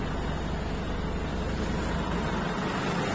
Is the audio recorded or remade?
recorded